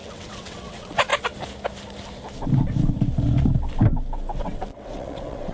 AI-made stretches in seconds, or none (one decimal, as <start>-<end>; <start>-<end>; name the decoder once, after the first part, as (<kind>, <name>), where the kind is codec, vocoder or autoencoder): 0.0-1.1 (vocoder, WaveNeXt); 4.4-5.5